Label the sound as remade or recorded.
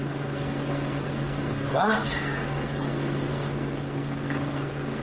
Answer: remade